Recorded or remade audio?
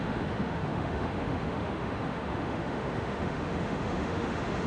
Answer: remade